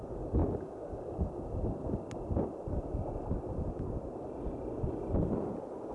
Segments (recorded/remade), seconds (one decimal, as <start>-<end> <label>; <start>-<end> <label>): 0.0-5.9 recorded